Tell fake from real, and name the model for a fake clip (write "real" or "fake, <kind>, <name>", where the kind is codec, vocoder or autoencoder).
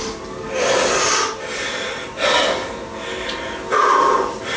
real